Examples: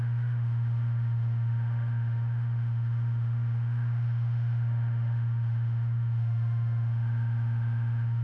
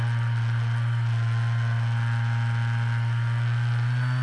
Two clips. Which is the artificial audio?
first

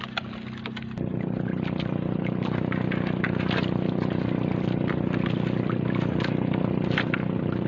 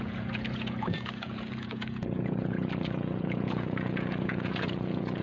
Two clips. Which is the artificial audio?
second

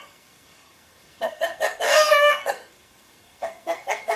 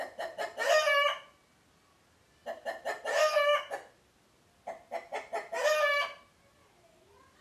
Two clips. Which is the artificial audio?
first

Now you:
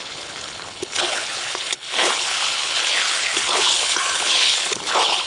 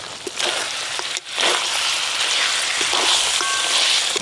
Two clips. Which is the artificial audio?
first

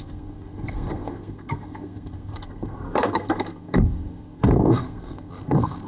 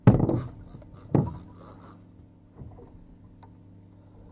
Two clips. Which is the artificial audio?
first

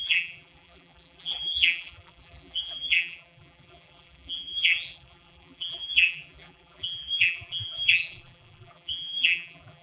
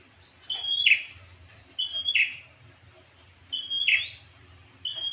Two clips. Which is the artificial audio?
first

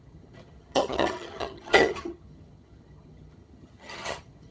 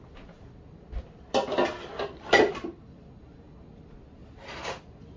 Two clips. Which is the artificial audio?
first